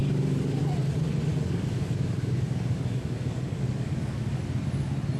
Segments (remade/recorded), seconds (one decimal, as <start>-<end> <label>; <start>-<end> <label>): 0.0-0.6 remade; 0.6-1.3 recorded; 1.3-4.4 remade; 4.4-5.2 recorded